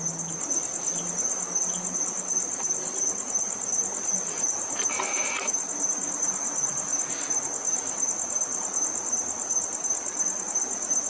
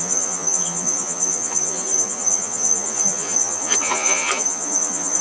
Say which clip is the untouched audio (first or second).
first